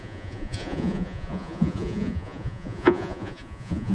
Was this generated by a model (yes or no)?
yes